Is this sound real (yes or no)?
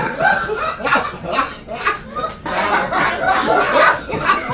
yes